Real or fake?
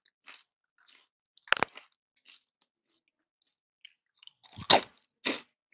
real